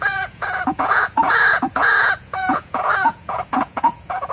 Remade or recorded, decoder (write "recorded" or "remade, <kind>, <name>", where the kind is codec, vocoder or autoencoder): remade, vocoder, Vocos